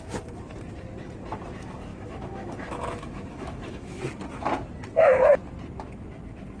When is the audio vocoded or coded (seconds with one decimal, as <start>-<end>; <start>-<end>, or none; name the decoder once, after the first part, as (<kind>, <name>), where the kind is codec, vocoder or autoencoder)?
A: 1.9-4.0 (autoencoder, DAC-VAE)